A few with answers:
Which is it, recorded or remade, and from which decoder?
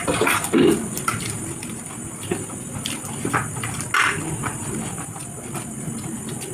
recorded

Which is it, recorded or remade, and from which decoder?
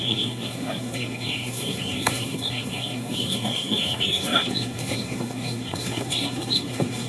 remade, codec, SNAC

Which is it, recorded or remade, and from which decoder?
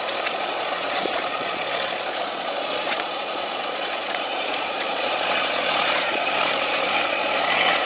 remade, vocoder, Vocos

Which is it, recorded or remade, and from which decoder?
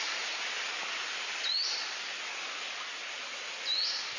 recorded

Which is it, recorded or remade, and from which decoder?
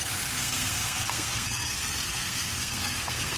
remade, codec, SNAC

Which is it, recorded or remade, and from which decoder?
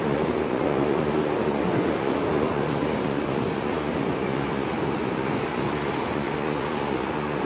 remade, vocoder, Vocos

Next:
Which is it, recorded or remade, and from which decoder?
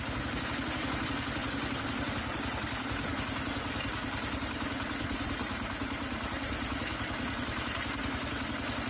recorded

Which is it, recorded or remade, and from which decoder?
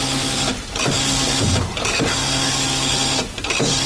recorded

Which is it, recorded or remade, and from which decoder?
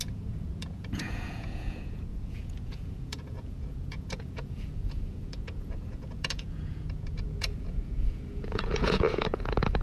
remade, vocoder, Vocos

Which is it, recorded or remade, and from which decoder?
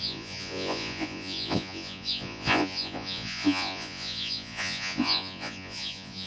remade, vocoder, Vocos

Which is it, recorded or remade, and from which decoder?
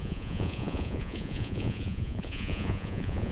remade, vocoder, Vocos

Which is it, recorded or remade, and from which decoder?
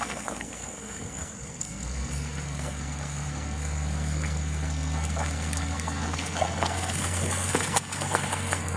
remade, codec, SNAC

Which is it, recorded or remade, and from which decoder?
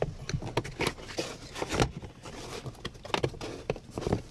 recorded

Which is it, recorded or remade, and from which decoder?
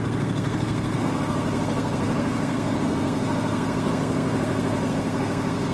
remade, codec, SNAC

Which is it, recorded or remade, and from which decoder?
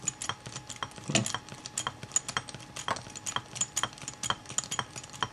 recorded